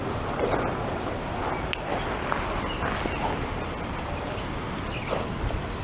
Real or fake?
real